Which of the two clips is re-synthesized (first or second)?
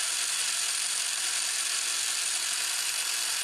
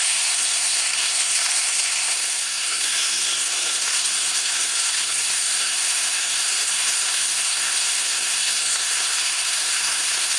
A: second